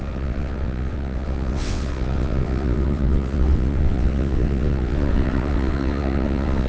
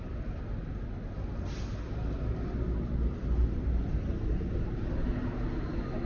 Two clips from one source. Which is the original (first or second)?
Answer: second